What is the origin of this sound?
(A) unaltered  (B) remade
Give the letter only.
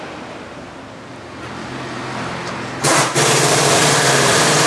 B